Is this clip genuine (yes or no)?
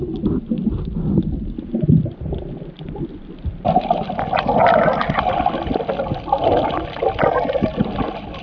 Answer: yes